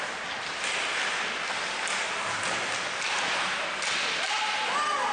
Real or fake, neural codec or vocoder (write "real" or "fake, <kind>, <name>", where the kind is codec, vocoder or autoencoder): real